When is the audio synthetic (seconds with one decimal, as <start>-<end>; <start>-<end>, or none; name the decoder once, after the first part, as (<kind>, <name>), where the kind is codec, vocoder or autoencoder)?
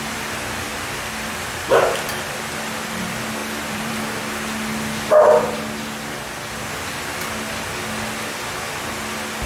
0.7-2.5 (vocoder, BigVGAN v2); 3.4-4.2